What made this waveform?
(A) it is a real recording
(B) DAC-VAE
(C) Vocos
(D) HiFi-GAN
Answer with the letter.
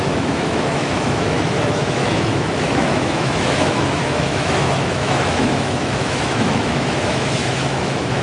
B